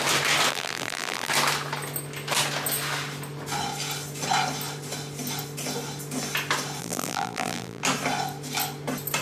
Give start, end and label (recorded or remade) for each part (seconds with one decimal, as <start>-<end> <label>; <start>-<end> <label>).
0.0-0.5 recorded; 0.5-1.3 remade; 1.3-6.8 recorded; 6.8-7.8 remade; 7.8-9.2 recorded